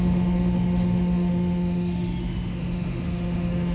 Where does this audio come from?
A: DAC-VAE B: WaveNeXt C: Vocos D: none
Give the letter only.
A